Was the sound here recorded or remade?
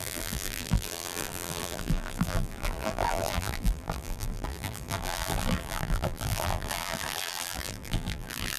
remade